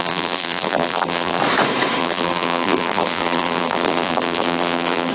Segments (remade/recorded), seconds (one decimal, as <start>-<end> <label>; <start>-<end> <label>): 0.0-1.4 remade; 1.4-2.0 recorded; 2.0-5.1 remade